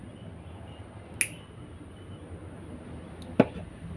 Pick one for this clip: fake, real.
real